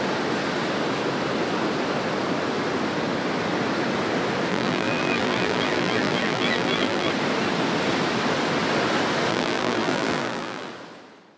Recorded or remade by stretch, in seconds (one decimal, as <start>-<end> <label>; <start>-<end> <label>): 0.0-4.5 recorded; 4.5-7.1 remade; 7.1-9.3 recorded; 9.3-10.7 remade; 10.7-11.4 recorded